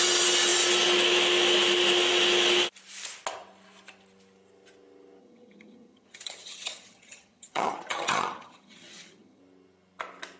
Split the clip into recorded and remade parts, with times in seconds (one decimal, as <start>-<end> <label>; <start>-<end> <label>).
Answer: 0.0-5.2 recorded; 5.2-9.4 remade; 9.4-10.4 recorded